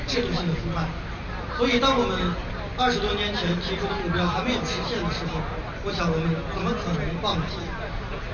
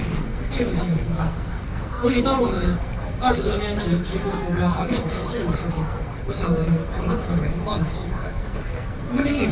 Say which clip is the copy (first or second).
second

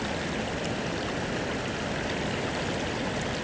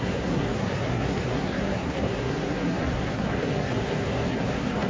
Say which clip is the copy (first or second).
second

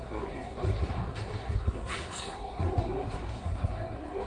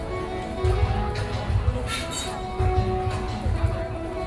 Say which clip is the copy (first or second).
first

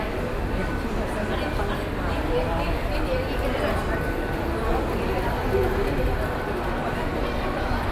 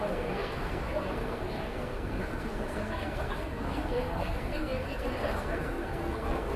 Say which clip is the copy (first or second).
second